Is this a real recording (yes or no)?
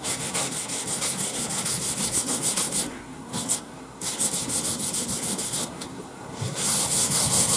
no